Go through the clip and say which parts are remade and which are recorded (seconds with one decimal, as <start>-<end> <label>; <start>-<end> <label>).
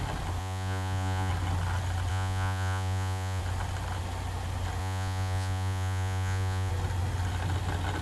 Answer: 0.0-0.4 recorded; 0.4-1.3 remade; 1.3-2.1 recorded; 2.1-3.4 remade; 3.4-4.8 recorded; 4.8-6.7 remade; 6.7-8.0 recorded